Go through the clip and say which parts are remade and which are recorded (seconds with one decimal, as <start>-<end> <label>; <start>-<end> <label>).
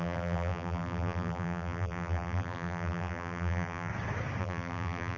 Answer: 0.0-3.9 remade; 3.9-4.4 recorded; 4.4-5.2 remade